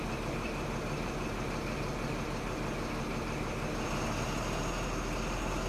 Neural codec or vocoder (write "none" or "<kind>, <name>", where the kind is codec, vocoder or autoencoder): none